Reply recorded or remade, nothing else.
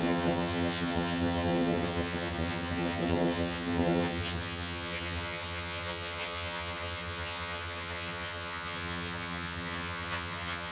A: remade